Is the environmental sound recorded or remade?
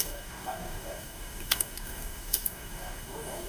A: remade